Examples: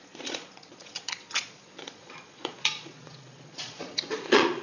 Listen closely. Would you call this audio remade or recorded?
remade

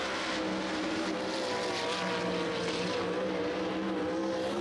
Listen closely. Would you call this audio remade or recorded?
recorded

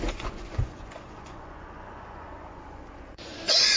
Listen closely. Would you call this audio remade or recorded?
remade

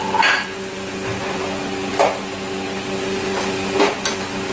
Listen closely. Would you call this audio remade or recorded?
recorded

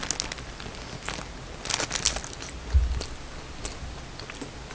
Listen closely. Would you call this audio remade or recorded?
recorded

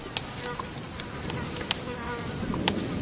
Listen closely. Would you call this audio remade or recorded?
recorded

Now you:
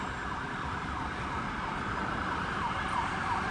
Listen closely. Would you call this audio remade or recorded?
recorded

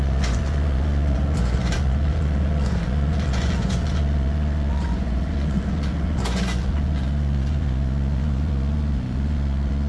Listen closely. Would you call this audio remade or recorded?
remade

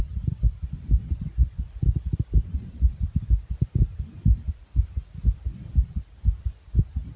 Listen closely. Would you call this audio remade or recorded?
recorded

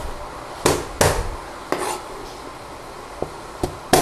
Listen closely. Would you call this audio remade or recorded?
recorded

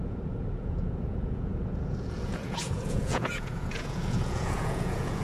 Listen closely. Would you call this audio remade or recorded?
remade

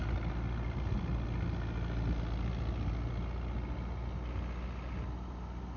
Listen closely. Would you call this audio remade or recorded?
recorded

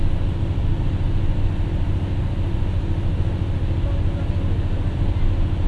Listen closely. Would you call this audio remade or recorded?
recorded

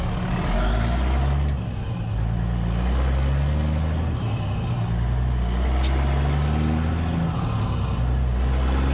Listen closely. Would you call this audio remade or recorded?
recorded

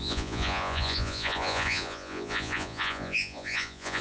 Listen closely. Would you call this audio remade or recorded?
remade